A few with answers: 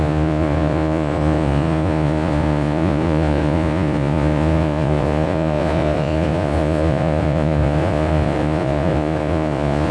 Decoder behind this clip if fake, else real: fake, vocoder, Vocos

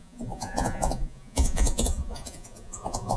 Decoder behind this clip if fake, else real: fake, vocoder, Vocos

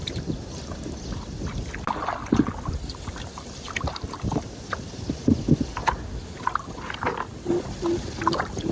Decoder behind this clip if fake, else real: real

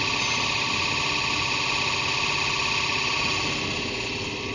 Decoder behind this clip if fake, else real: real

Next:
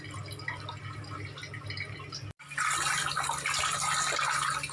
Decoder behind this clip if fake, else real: real